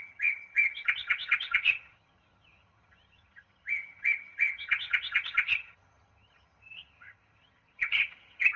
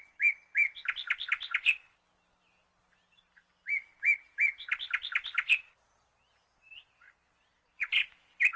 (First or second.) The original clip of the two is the second